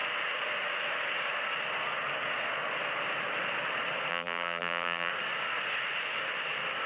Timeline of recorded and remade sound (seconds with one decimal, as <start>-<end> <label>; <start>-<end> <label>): 0.0-4.1 recorded; 4.1-5.1 remade; 5.1-6.9 recorded